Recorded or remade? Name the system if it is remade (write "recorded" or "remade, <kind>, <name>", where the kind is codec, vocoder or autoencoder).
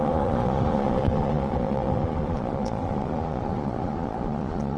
remade, vocoder, Vocos